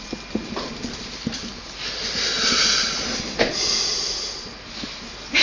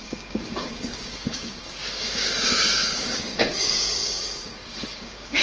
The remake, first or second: second